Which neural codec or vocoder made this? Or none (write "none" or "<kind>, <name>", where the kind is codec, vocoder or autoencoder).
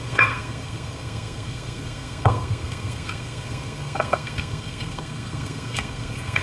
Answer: codec, SNAC